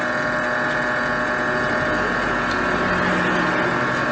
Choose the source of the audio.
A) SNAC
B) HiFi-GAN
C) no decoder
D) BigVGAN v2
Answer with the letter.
C